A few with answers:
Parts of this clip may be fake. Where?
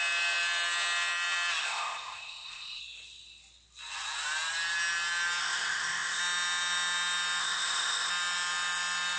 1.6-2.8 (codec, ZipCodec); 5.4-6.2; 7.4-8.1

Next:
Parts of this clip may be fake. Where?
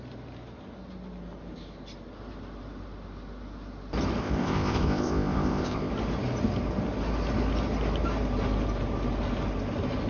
4.2-5.9 (codec, ZipCodec)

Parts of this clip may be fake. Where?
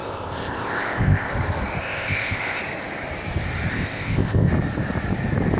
0.0-1.3 (codec, ZipCodec); 1.8-2.6; 3.7-4.5